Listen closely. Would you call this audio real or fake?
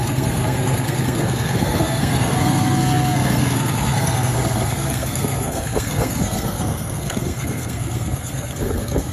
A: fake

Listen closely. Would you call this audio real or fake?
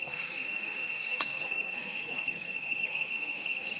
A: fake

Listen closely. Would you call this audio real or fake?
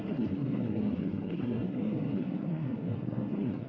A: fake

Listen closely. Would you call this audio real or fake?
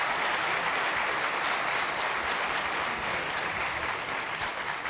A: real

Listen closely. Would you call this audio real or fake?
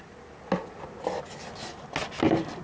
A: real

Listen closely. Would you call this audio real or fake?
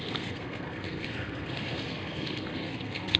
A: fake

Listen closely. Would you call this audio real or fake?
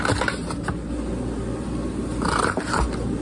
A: real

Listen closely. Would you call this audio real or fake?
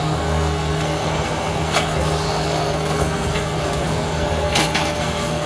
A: fake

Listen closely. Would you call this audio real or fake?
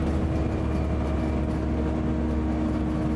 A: real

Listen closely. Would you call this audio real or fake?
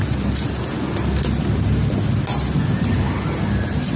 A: real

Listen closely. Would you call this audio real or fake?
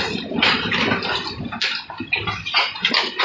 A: real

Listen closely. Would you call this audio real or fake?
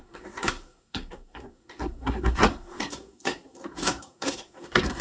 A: fake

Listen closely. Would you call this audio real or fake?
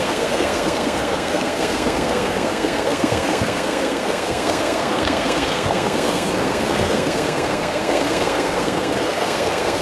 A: fake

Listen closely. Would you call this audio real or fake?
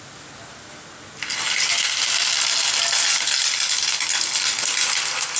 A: real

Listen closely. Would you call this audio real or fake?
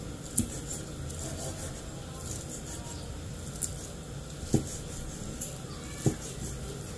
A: real